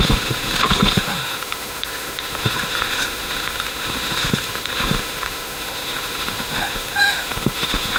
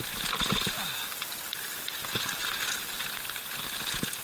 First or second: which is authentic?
second